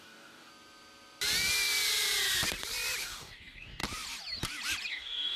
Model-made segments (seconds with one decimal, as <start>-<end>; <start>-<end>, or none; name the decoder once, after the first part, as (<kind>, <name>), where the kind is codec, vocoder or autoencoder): 0.0-0.5 (codec, DAC); 3.0-3.8; 4.9-5.4